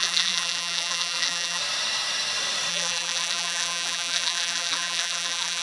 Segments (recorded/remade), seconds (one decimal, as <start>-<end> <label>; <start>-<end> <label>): 0.0-1.6 remade; 1.6-2.7 recorded; 2.7-5.6 remade